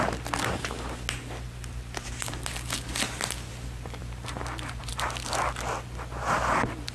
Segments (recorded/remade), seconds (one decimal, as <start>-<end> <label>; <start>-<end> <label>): 0.0-4.0 recorded; 4.0-4.8 remade; 4.8-6.9 recorded